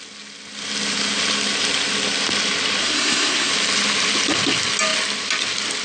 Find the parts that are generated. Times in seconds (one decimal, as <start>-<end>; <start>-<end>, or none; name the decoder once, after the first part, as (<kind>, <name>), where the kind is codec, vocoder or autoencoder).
2.8-3.5 (codec, SNAC)

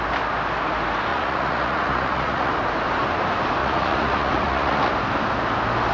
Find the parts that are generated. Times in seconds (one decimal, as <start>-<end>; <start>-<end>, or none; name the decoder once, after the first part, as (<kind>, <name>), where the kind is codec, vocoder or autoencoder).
1.1-2.5 (vocoder, Vocos); 3.6-4.9